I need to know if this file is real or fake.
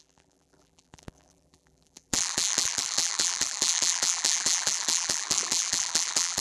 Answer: fake